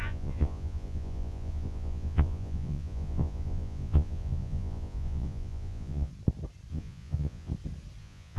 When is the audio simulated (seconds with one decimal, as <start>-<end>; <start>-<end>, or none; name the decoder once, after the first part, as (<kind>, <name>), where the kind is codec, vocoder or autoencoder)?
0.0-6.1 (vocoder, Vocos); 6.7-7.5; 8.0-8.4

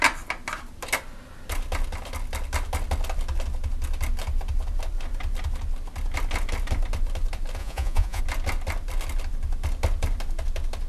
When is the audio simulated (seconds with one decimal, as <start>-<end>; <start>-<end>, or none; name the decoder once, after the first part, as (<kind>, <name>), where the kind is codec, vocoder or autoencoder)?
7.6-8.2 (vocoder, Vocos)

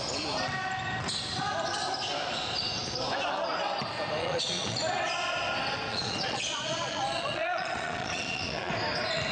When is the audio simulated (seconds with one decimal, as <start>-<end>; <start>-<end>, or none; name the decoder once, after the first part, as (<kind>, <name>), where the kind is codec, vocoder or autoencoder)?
4.2-4.8 (vocoder, Vocos); 5.9-8.7

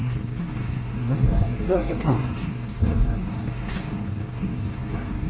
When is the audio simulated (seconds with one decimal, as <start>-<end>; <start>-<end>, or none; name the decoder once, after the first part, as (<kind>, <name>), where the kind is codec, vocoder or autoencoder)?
0.0-5.3 (codec, SNAC)

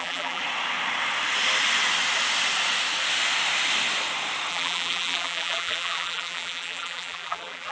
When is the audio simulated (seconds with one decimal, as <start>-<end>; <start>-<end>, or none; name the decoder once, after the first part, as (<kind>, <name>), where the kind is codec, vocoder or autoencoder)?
0.0-0.4 (vocoder, BigVGAN v2); 4.5-7.7